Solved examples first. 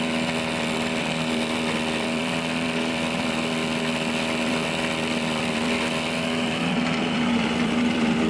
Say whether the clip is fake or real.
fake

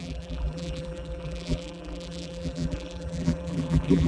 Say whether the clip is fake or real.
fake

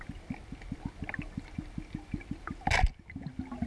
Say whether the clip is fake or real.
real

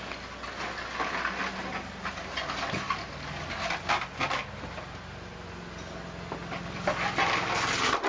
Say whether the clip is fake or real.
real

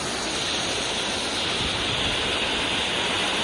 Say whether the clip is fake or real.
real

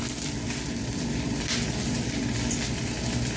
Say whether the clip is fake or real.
fake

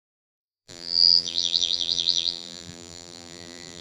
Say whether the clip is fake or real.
fake